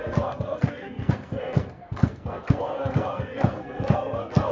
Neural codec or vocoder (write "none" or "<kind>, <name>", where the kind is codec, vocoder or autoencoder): codec, SNAC